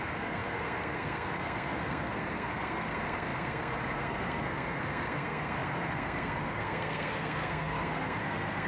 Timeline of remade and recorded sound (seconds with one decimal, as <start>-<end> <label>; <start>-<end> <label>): 0.0-8.7 remade